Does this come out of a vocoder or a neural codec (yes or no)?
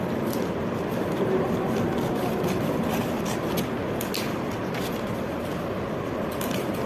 no